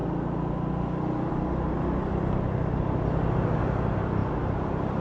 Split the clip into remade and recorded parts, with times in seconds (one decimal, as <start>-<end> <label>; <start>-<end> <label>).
0.0-5.0 recorded